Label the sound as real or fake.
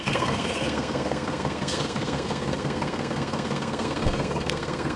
fake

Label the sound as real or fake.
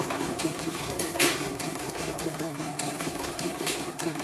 fake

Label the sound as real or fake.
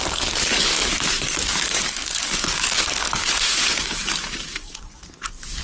fake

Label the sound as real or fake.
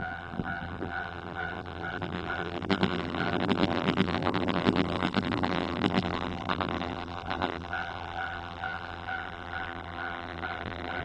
fake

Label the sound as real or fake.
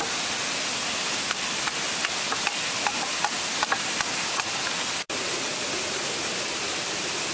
real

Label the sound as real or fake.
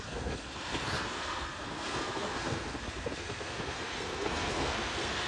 fake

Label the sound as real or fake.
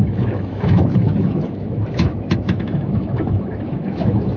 fake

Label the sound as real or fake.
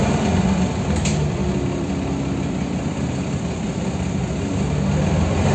fake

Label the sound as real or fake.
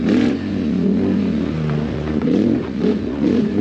fake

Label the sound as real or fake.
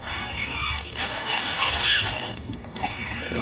fake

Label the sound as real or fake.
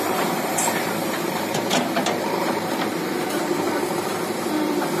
fake